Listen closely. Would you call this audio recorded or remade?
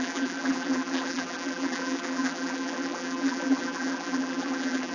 remade